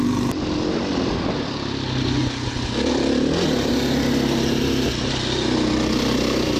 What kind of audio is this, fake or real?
real